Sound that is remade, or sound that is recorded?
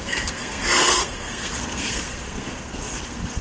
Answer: remade